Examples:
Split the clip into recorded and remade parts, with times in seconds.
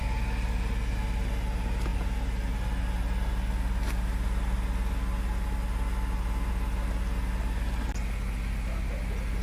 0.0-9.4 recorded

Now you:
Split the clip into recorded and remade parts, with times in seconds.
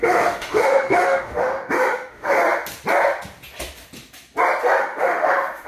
0.0-2.4 remade; 2.4-4.8 recorded; 4.8-5.7 remade